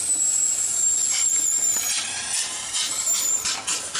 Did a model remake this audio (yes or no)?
yes